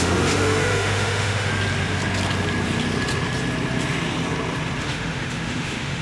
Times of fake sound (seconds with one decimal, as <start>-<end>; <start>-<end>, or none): 0.0-1.5; 4.8-6.0